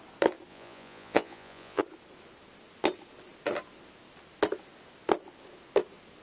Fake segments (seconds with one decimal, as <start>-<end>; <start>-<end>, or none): 0.5-1.8